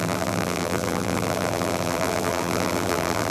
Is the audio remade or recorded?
remade